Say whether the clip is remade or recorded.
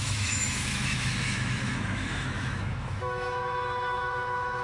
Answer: remade